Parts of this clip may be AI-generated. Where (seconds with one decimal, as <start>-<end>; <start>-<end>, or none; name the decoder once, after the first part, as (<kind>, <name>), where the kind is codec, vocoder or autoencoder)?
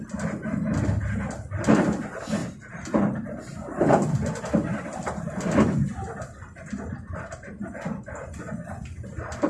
none